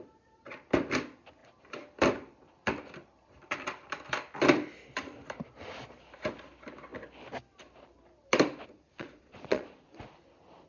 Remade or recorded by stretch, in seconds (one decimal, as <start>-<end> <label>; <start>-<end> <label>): 0.0-8.7 recorded; 8.7-10.0 remade; 10.0-10.7 recorded